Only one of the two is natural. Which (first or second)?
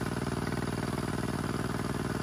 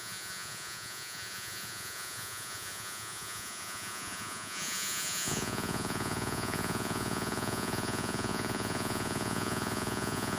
first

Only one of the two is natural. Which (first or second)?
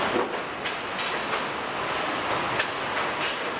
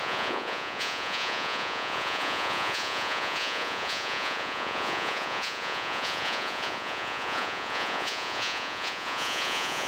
first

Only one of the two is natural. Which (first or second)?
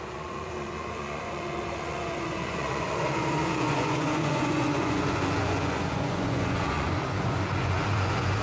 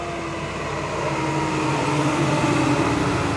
second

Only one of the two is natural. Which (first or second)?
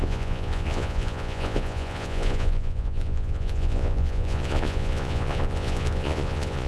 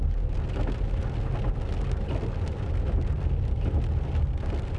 second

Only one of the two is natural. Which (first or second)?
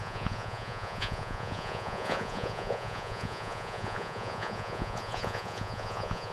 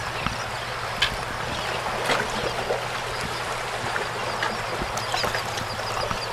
second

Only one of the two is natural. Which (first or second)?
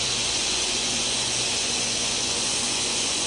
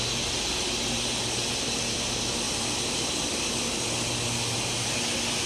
second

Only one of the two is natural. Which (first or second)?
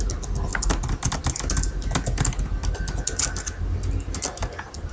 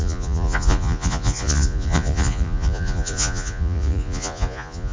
first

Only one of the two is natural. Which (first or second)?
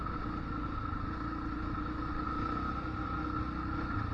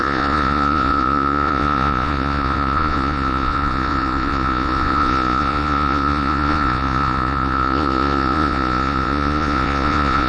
first